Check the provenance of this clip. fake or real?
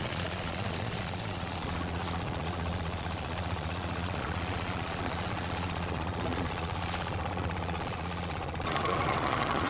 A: fake